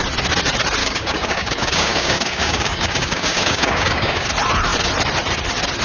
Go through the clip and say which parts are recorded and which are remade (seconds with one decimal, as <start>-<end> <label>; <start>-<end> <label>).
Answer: 0.0-0.8 recorded; 0.8-4.3 remade; 4.3-5.8 recorded